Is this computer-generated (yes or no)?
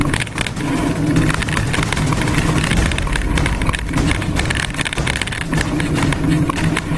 no